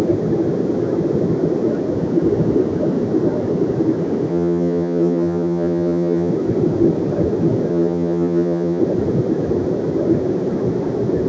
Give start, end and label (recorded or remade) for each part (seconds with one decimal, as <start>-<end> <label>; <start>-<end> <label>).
0.0-4.3 recorded; 4.3-6.3 remade; 6.3-7.7 recorded; 7.7-8.8 remade; 8.8-11.3 recorded